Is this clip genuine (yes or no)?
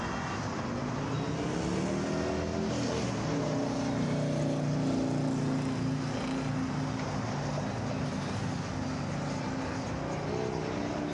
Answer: yes